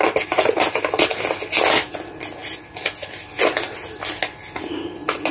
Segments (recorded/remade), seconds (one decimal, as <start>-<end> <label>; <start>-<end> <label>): 0.0-5.3 recorded